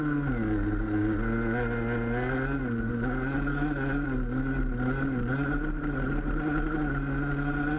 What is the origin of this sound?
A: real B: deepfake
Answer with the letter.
A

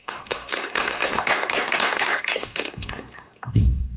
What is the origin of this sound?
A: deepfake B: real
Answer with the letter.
A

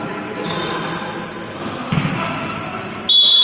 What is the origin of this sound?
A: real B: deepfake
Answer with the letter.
A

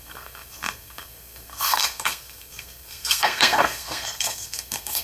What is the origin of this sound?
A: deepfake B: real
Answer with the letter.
A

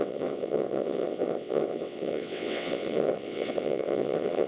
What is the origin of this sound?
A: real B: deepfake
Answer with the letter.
B